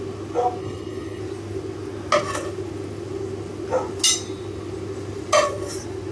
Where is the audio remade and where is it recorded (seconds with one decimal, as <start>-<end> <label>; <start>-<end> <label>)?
0.0-0.6 recorded; 0.6-1.2 remade; 1.2-6.1 recorded